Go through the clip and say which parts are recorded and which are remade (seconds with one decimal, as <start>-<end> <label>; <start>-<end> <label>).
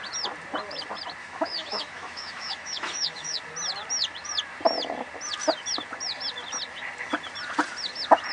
0.0-1.2 recorded; 1.2-3.4 remade; 3.4-8.3 recorded